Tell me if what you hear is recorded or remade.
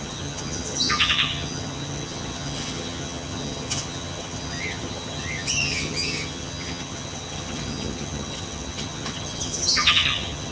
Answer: remade